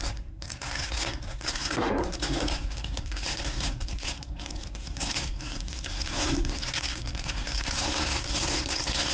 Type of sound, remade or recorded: remade